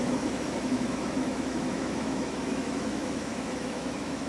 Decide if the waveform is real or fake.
fake